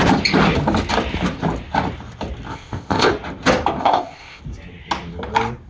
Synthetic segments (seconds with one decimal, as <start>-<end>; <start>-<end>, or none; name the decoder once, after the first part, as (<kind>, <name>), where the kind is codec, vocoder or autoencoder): 2.5-3.1 (codec, ZipCodec); 3.8-4.4